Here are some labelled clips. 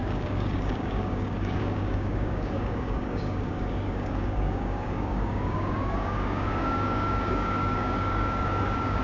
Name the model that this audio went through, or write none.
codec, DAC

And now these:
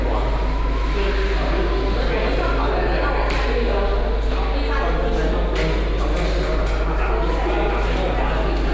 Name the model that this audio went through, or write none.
none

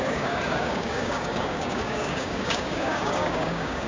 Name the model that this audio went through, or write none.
codec, DAC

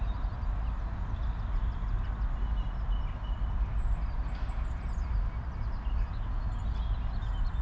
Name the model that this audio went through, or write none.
none